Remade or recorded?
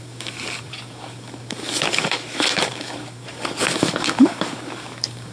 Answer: remade